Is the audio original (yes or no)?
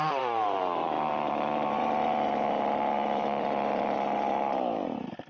no